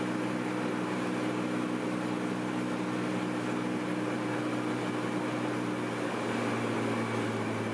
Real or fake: real